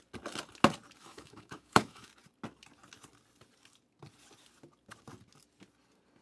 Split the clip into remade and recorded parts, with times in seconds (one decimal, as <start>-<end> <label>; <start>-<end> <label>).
0.0-1.0 recorded; 1.0-2.1 remade; 2.1-6.2 recorded